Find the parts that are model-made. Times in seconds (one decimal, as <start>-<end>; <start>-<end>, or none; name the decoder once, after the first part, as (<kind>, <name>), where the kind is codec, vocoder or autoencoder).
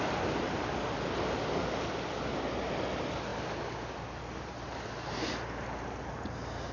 none